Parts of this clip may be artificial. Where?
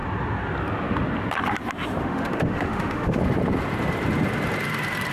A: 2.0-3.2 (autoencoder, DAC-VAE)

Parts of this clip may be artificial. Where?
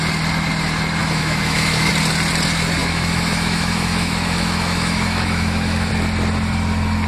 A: 1.0-1.9 (autoencoder, DAC-VAE); 2.8-5.9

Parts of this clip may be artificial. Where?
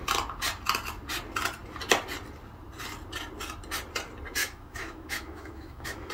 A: 4.4-6.1 (autoencoder, DAC-VAE)